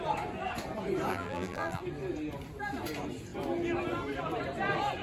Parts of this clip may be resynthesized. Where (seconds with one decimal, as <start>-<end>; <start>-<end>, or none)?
1.1-1.8